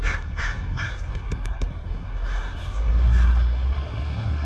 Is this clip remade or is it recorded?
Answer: remade